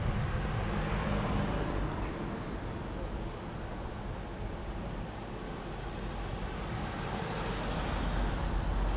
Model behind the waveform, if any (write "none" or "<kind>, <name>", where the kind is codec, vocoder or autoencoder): none